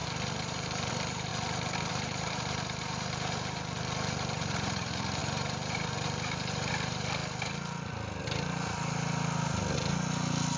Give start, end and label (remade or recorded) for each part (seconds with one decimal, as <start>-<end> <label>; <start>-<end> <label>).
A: 0.0-1.3 remade; 1.3-1.9 recorded; 1.9-7.2 remade; 7.2-10.6 recorded